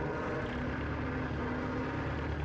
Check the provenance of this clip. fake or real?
real